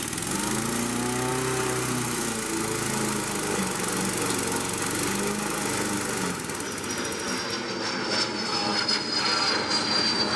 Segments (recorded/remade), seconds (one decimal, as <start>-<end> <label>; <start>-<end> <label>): 0.0-10.4 recorded